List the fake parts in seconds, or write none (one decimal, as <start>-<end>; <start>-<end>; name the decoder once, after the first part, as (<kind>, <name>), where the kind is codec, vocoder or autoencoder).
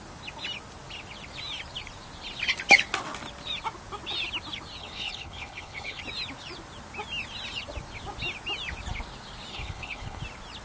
4.8-6.0 (codec, HILCodec); 9.5-10.2